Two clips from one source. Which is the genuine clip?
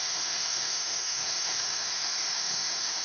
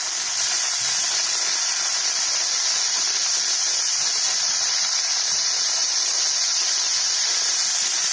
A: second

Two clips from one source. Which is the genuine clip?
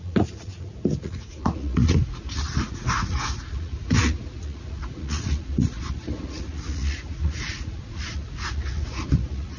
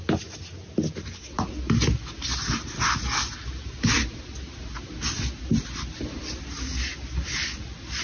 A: second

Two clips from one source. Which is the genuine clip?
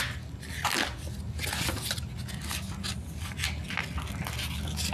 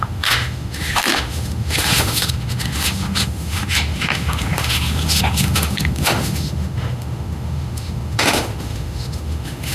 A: first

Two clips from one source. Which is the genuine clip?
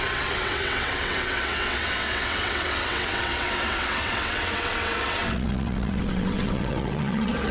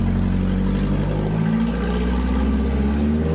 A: second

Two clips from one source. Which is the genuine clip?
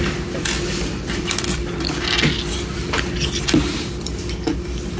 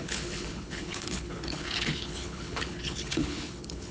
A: first